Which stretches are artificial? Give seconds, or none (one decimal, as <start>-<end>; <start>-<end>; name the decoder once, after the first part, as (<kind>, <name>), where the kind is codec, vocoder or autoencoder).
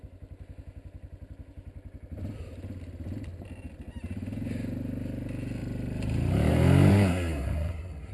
6.9-8.1 (codec, SNAC)